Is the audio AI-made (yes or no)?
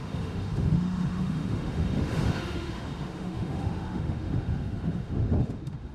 yes